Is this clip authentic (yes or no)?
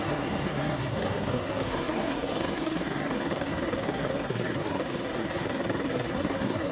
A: no